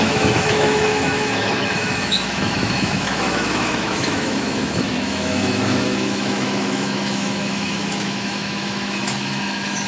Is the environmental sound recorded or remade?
remade